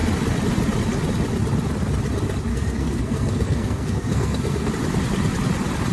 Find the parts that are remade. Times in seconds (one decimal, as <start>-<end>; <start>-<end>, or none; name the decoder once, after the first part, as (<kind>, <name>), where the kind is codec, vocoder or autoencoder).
2.5-4.7 (codec, SNAC)